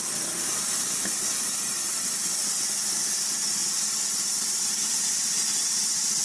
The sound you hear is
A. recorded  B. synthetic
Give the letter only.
B